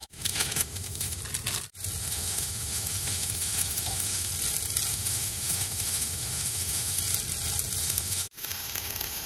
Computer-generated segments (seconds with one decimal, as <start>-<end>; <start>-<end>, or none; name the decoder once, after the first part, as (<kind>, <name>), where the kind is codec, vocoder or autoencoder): 0.0-1.2 (autoencoder, DAC-VAE); 2.0-4.3; 4.9-7.0; 7.8-9.3